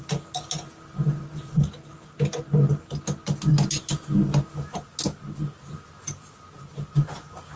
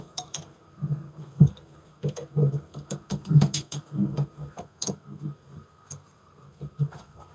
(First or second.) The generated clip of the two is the second